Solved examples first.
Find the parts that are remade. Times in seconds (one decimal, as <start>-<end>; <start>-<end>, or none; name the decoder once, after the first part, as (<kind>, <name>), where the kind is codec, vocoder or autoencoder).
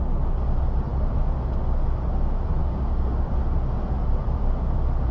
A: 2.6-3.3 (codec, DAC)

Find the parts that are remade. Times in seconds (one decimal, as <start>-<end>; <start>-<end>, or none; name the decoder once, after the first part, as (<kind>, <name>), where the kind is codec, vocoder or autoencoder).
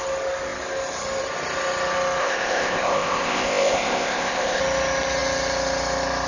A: 2.2-4.6 (codec, ZipCodec)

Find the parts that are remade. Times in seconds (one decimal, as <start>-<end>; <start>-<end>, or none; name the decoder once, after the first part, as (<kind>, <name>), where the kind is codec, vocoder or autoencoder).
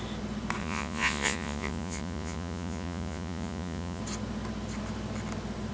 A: 0.6-4.0 (vocoder, Vocos)